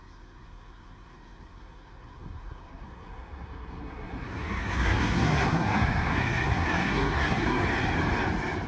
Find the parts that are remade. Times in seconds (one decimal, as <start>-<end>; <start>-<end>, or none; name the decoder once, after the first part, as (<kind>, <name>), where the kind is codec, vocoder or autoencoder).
0.0-7.6 (codec, SNAC)